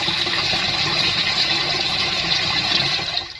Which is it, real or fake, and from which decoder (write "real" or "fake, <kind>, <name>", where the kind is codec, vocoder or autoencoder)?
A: fake, vocoder, BigVGAN v2